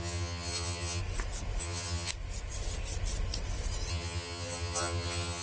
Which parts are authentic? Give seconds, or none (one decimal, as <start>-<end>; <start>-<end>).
1.0-1.6; 2.1-3.9